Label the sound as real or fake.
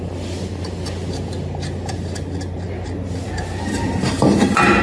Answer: real